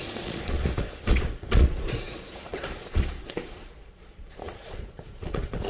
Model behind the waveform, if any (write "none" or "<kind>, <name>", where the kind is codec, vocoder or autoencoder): vocoder, Vocos